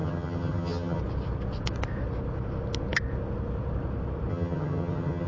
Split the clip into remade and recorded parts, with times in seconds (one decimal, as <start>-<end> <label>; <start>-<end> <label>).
0.0-1.0 remade; 1.0-4.3 recorded; 4.3-5.3 remade